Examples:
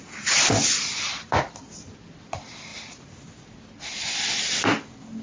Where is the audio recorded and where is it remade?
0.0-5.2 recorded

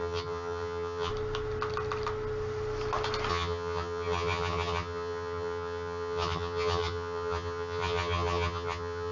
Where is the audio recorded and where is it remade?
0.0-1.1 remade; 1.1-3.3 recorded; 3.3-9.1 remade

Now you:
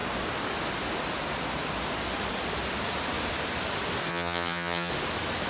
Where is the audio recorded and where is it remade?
0.0-4.1 recorded; 4.1-4.9 remade; 4.9-5.5 recorded

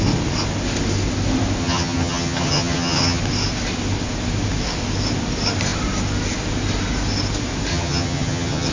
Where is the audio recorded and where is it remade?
0.0-1.6 recorded; 1.6-3.2 remade; 3.2-7.7 recorded; 7.7-8.7 remade